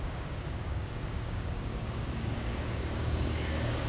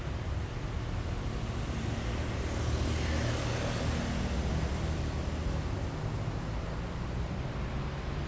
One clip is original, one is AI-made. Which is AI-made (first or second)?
first